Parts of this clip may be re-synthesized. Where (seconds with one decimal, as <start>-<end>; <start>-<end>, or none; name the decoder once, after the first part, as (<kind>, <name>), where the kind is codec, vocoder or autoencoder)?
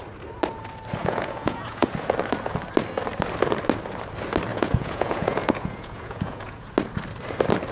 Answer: 1.0-1.9 (vocoder, Vocos); 4.5-6.7